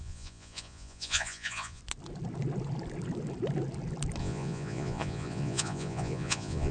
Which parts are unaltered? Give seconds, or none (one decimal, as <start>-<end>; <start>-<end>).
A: 1.8-4.2